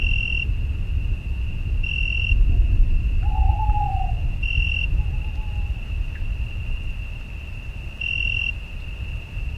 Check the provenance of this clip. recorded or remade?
recorded